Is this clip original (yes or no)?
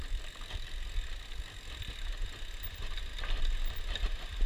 yes